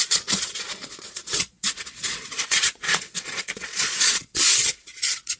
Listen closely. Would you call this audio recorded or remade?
remade